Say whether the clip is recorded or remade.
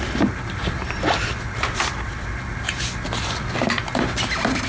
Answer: recorded